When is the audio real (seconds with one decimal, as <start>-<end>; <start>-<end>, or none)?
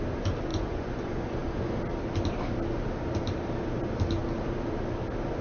0.0-0.5; 1.8-5.4